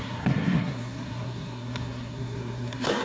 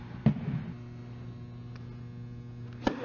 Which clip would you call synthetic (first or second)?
first